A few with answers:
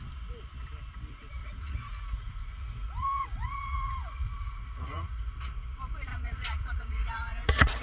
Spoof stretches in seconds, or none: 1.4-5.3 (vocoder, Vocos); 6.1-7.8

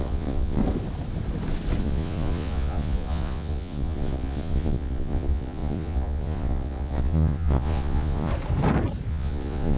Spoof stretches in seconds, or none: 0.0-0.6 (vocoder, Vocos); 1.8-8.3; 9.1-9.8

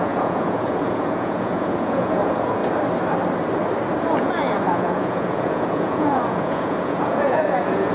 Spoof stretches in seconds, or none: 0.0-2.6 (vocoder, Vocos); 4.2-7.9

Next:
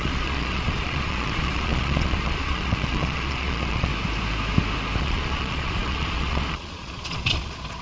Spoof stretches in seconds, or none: 0.0-3.9 (vocoder, Vocos); 5.0-7.8